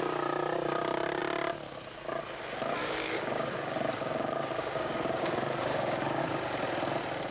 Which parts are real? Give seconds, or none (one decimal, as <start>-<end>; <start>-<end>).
0.0-2.8; 6.2-7.3